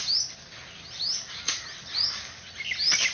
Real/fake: real